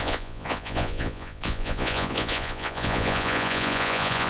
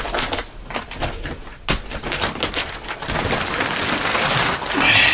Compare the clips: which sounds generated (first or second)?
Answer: first